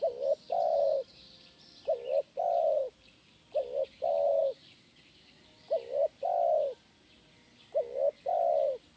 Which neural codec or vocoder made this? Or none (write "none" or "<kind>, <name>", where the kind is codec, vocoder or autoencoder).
none